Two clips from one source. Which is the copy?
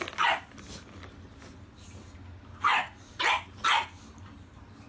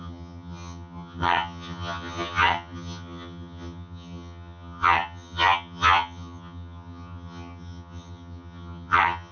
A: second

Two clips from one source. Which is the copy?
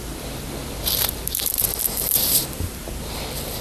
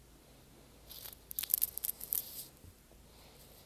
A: first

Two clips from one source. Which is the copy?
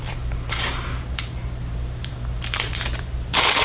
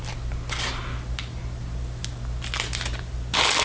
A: first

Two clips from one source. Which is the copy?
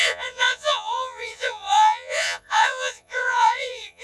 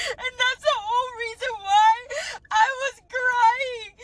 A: first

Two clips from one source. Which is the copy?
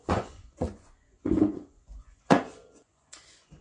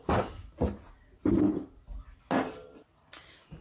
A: first